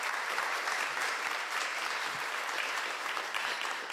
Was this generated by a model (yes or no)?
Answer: yes